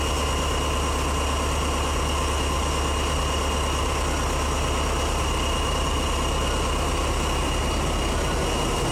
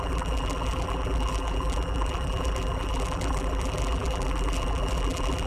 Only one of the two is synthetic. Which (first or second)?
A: second